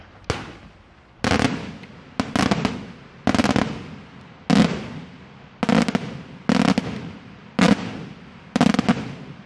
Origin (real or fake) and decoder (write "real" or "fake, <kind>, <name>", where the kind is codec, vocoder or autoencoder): real